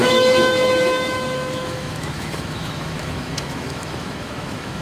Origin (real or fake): fake